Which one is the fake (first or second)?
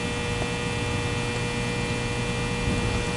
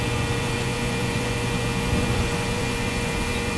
second